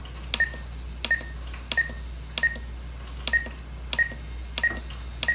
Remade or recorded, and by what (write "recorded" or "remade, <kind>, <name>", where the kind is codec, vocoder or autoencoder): recorded